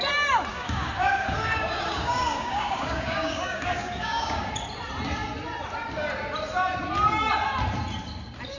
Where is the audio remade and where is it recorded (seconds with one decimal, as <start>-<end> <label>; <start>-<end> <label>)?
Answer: 0.0-0.5 recorded; 0.5-4.5 remade; 4.5-8.6 recorded

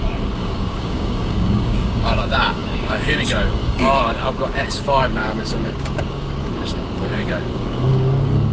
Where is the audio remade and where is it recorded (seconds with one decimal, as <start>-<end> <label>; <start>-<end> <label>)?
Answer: 0.0-8.5 remade

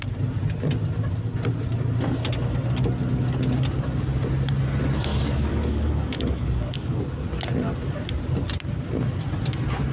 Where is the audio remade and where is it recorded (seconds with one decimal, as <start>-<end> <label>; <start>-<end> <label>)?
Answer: 0.0-5.1 recorded; 5.1-7.0 remade; 7.0-9.9 recorded

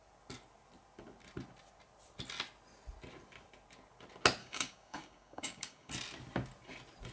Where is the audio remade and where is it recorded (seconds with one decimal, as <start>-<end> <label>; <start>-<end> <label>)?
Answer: 0.0-4.4 recorded; 4.4-5.9 remade; 5.9-7.1 recorded

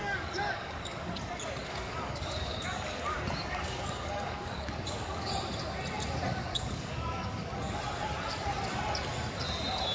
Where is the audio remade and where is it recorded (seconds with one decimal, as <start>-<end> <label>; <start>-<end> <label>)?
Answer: 0.0-1.1 remade; 1.1-1.6 recorded; 1.6-3.0 remade; 3.0-3.5 recorded; 3.5-5.3 remade; 5.3-6.4 recorded; 6.4-7.8 remade; 7.8-9.9 recorded

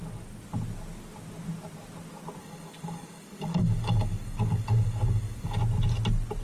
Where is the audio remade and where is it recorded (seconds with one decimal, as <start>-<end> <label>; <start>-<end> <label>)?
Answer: 0.0-2.4 recorded; 2.4-5.6 remade; 5.6-6.4 recorded